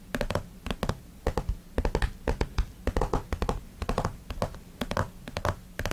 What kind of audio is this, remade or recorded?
recorded